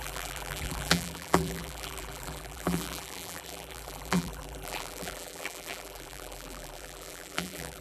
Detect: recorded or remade remade